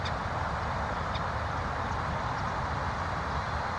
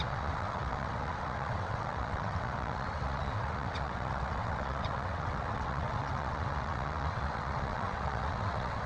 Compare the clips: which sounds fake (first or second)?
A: second